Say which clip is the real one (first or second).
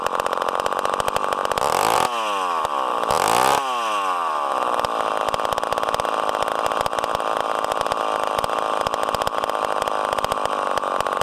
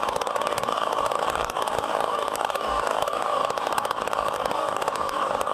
first